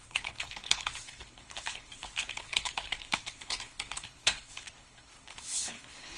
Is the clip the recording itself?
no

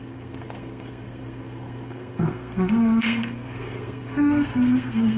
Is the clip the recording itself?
no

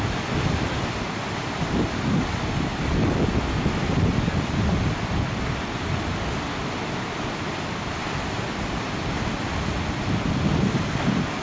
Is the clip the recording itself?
yes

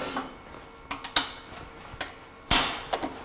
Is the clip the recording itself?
yes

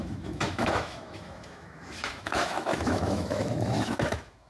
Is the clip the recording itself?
no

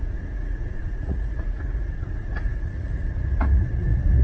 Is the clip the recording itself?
no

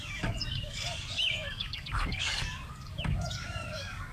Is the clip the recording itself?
no